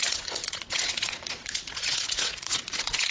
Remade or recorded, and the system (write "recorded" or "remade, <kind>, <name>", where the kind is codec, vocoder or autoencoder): remade, vocoder, Vocos